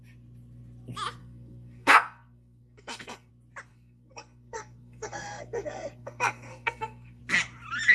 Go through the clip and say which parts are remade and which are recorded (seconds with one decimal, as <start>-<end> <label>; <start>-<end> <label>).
0.0-1.2 recorded; 1.2-3.3 remade; 3.3-3.7 recorded; 3.7-7.2 remade; 7.2-7.9 recorded